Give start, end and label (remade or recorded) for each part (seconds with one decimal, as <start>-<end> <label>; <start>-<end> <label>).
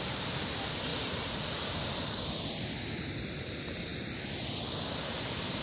0.0-0.9 recorded; 0.9-3.4 remade; 3.4-5.6 recorded